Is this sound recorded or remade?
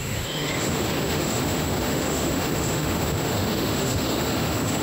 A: remade